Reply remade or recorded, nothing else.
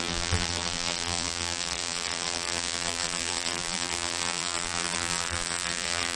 remade